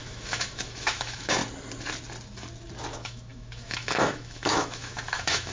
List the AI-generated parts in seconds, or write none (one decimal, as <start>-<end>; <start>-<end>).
0.0-1.4; 2.9-5.5